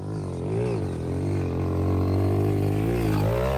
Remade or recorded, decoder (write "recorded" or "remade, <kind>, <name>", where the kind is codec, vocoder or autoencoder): recorded